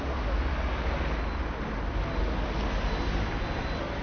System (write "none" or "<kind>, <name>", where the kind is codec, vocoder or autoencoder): none